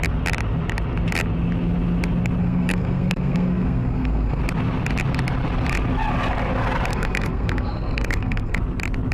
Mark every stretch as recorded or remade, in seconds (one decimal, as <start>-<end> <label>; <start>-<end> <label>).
0.0-2.4 recorded; 2.4-4.4 remade; 4.4-6.9 recorded; 6.9-8.6 remade; 8.6-9.1 recorded